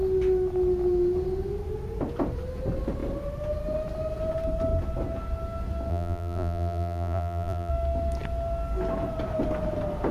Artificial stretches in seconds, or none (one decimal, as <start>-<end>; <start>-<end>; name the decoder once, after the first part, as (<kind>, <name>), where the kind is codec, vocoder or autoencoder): 5.9-7.7 (vocoder, BigVGAN v2)